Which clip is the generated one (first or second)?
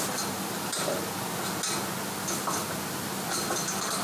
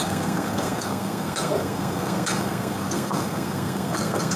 second